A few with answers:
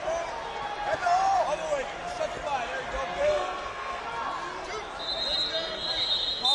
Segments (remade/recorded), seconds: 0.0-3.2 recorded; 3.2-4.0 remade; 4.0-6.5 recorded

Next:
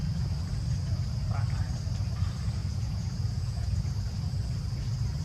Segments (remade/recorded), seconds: 0.0-2.6 recorded; 2.6-3.9 remade; 3.9-5.2 recorded

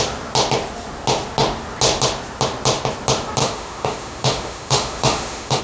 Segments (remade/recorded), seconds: 0.0-3.4 recorded; 3.4-5.6 remade